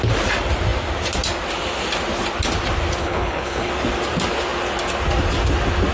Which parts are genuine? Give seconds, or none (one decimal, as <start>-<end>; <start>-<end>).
0.0-3.0; 3.7-5.9